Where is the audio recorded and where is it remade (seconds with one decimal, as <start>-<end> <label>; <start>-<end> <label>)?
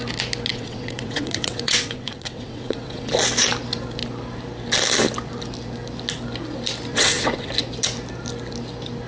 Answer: 0.0-0.5 recorded; 0.5-3.1 remade; 3.1-6.9 recorded; 6.9-7.5 remade; 7.5-9.1 recorded